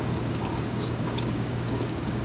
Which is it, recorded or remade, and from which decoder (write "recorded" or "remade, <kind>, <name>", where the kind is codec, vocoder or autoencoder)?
remade, codec, DAC